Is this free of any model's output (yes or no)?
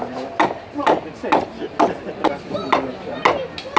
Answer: yes